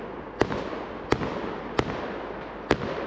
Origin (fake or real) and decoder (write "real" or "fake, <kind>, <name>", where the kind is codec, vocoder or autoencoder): real